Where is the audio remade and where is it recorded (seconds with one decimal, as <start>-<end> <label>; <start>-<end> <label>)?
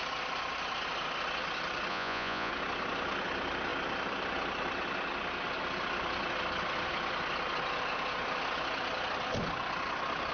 0.0-1.9 recorded; 1.9-2.5 remade; 2.5-10.3 recorded